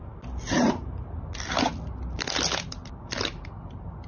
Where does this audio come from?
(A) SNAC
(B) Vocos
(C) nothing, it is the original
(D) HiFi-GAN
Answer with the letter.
C